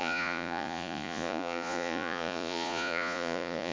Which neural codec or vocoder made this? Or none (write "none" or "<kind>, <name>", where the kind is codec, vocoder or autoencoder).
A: vocoder, Vocos